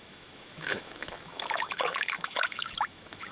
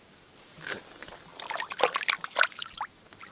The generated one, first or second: first